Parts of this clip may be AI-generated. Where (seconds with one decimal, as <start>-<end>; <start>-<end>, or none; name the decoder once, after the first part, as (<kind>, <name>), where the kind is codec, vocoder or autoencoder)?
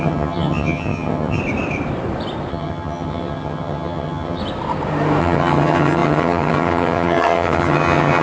0.0-1.4 (vocoder, HiFi-GAN); 2.5-4.4; 5.2-8.2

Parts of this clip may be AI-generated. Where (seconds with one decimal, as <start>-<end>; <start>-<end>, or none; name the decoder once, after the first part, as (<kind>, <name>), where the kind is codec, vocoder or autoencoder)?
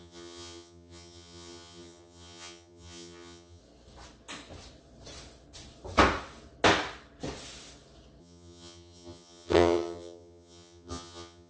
0.0-3.6 (vocoder, HiFi-GAN); 8.2-11.5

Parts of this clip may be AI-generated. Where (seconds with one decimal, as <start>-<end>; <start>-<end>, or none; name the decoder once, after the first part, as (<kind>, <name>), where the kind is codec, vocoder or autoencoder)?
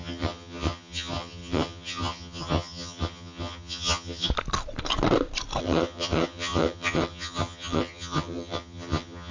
0.0-4.3 (vocoder, HiFi-GAN); 5.6-9.3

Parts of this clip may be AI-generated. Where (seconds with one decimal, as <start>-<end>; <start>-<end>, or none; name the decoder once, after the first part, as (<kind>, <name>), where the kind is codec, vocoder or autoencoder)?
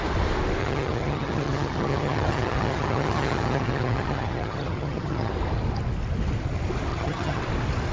0.6-5.3 (vocoder, HiFi-GAN); 6.9-7.4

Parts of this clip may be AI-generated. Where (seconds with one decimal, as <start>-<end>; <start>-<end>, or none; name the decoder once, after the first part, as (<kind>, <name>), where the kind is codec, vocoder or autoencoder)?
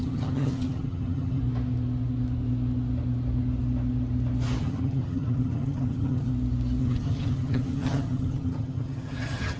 0.0-1.4 (vocoder, HiFi-GAN); 4.6-6.3; 6.8-9.6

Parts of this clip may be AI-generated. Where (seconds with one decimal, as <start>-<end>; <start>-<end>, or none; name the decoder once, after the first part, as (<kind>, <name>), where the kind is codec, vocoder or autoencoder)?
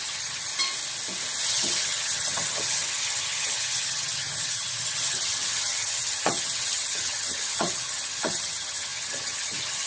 0.0-0.5 (vocoder, HiFi-GAN); 1.5-9.9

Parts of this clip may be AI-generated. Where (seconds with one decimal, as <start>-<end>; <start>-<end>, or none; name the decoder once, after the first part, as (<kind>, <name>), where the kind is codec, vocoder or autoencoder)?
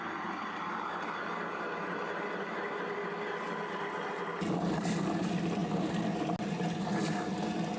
none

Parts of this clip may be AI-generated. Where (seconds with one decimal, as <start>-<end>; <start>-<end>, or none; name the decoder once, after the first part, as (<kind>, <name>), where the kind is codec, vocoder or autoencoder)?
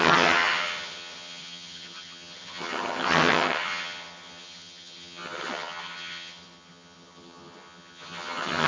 0.0-8.7 (vocoder, HiFi-GAN)